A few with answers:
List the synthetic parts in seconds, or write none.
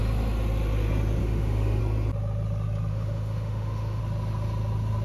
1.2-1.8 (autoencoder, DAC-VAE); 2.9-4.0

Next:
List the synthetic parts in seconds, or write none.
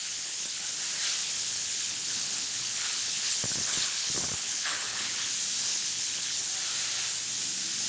0.0-0.7 (codec, HILCodec); 1.2-5.3; 5.7-6.5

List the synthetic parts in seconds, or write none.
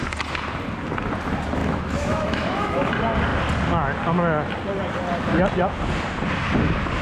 1.6-2.9 (autoencoder, DAC-VAE)